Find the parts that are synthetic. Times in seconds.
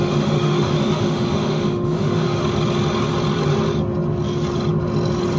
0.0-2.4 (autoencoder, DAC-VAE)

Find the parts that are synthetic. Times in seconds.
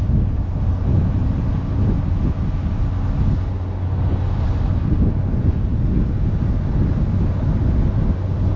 none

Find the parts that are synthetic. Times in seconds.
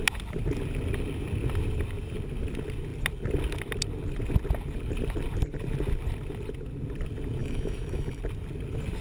7.4-8.2 (autoencoder, DAC-VAE)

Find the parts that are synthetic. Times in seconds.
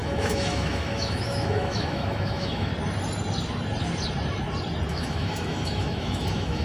0.0-2.7 (autoencoder, DAC-VAE); 4.9-6.6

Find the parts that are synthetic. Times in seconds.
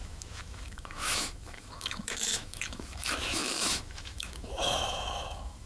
0.0-5.7 (autoencoder, DAC-VAE)